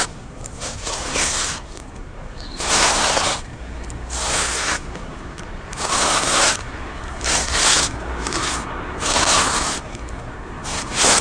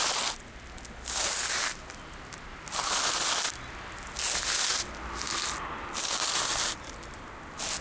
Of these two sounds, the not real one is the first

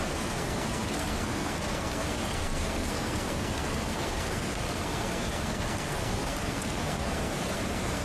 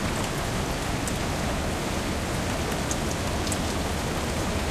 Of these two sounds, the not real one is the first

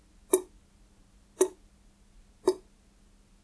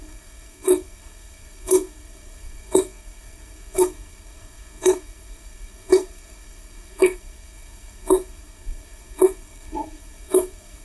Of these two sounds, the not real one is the second